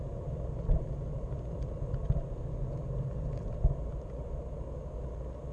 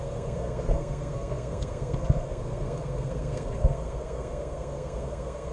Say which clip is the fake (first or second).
second